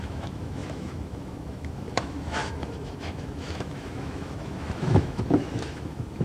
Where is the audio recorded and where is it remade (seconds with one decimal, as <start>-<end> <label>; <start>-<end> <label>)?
0.0-6.2 remade